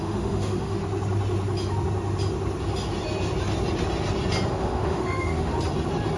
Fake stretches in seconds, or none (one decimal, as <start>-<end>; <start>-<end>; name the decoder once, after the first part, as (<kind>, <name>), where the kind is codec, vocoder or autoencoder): 0.0-0.8 (autoencoder, DAC-VAE); 4.5-5.5